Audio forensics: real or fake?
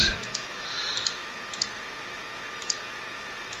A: fake